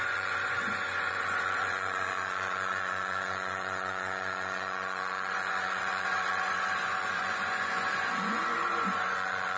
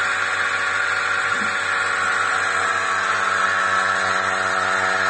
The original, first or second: second